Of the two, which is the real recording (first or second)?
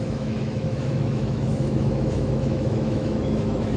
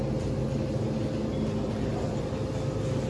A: second